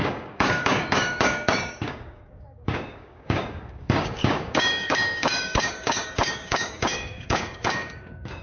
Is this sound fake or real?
fake